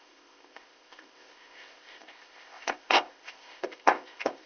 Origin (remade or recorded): remade